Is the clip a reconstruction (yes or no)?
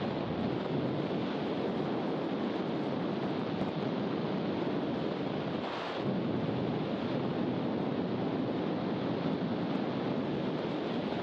no